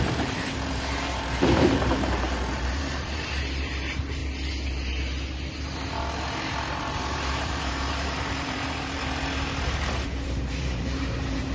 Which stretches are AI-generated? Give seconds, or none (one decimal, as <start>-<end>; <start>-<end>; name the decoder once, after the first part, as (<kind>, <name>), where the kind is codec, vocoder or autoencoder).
0.0-4.2 (vocoder, BigVGAN v2); 6.8-11.5